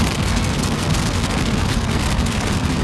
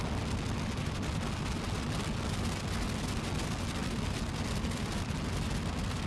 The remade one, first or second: first